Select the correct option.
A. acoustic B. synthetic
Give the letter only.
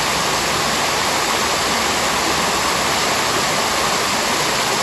A